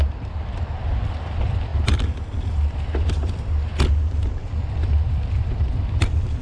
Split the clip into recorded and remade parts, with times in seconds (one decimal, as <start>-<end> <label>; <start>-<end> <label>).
0.0-6.4 remade